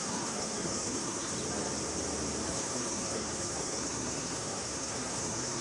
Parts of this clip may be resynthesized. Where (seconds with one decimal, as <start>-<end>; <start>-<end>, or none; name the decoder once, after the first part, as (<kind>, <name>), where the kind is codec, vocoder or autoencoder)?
0.0-1.3 (codec, SNAC); 2.5-5.6